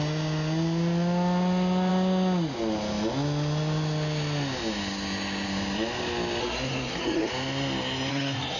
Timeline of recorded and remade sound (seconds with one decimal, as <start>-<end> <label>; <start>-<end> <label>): 0.0-6.4 recorded; 6.4-7.3 remade; 7.3-8.1 recorded; 8.1-8.6 remade

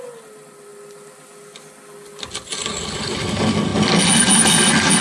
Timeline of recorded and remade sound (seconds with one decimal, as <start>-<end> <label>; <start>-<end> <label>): 0.0-5.0 recorded

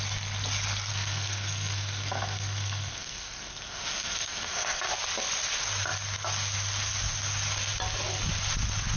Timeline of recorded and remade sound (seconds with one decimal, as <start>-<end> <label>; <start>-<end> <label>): 0.0-0.9 recorded; 0.9-4.8 remade; 4.8-9.0 recorded

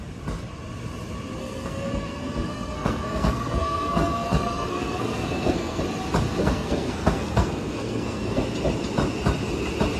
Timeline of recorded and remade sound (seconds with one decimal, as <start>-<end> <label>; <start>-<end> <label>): 0.0-1.4 recorded; 1.4-5.8 remade; 5.8-6.4 recorded; 6.4-8.4 remade; 8.4-10.0 recorded